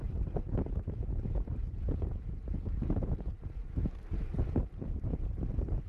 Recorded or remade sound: remade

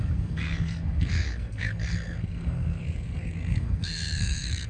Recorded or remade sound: remade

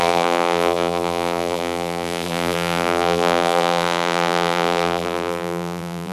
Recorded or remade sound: remade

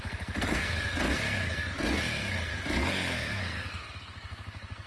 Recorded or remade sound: remade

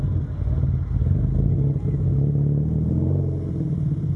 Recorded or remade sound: recorded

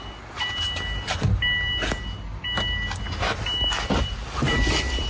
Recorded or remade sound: recorded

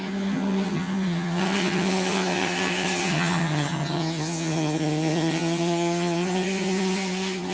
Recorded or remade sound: remade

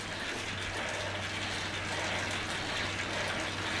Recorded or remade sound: recorded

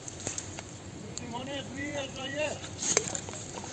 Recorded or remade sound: remade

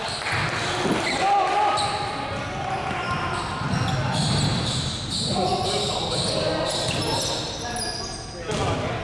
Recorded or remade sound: recorded